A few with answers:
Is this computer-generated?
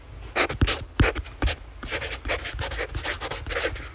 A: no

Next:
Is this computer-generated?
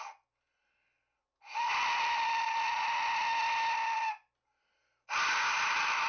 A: no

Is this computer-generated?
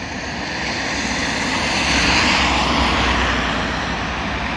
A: no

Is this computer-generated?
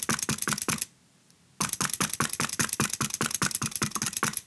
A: no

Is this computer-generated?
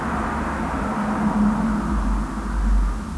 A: no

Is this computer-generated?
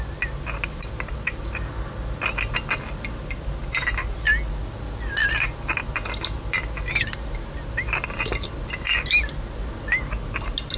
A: no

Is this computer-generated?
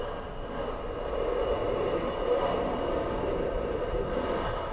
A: no